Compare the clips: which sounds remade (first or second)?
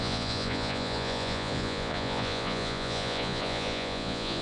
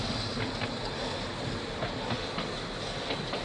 first